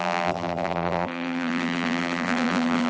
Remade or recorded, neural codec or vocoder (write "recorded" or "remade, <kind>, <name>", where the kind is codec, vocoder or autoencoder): remade, vocoder, BigVGAN v2